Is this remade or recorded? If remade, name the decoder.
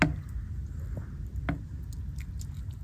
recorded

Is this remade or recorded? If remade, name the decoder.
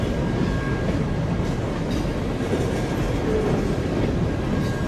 recorded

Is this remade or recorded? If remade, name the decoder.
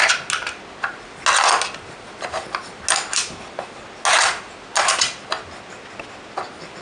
recorded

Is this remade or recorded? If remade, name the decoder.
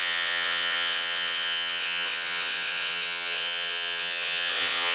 remade, vocoder, WaveNeXt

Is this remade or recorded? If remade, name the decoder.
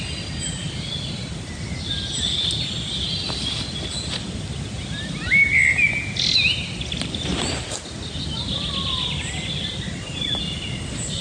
recorded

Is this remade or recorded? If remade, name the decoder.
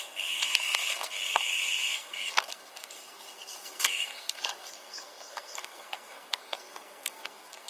remade, codec, SNAC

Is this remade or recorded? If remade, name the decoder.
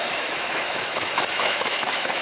remade, autoencoder, DAC-VAE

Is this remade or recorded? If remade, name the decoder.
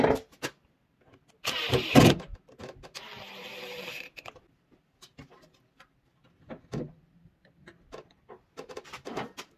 recorded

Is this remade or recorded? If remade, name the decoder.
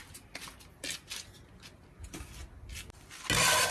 recorded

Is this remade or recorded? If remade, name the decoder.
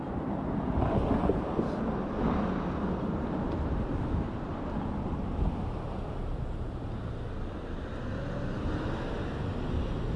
recorded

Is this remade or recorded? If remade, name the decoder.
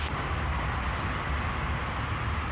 recorded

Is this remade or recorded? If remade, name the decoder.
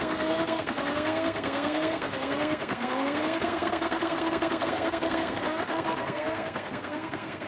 remade, codec, SNAC